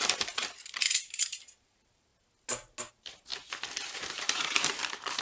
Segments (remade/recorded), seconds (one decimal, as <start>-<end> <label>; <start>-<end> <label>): 0.0-2.1 remade; 2.1-2.9 recorded; 2.9-3.3 remade; 3.3-3.9 recorded; 3.9-5.2 remade